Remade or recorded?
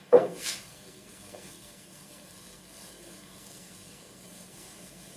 remade